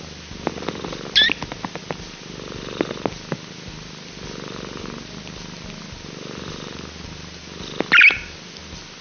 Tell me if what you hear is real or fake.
real